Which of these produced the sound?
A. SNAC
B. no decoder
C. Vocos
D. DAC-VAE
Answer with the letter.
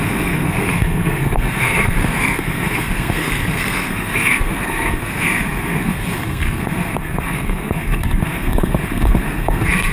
A